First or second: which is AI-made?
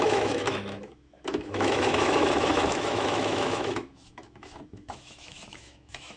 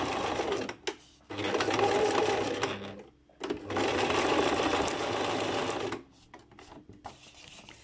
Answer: first